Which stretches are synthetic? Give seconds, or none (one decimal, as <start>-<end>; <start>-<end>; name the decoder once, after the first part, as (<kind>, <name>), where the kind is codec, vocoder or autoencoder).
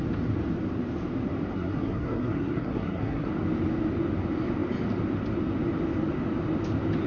1.5-3.3 (codec, SNAC)